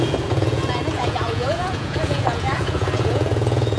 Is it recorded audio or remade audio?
remade